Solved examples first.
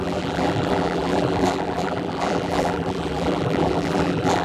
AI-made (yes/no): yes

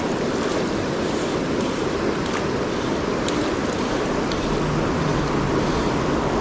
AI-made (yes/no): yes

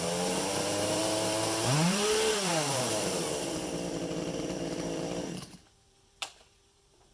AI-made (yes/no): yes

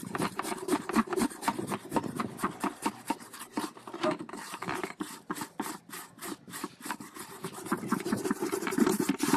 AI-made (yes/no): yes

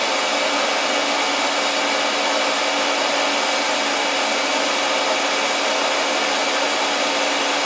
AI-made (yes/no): no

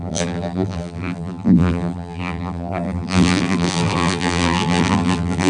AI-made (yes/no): yes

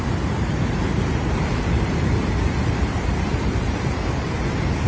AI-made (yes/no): yes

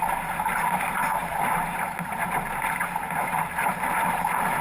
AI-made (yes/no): no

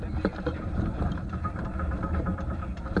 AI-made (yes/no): yes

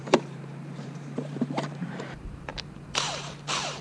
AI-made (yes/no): yes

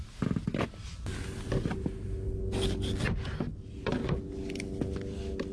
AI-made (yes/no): no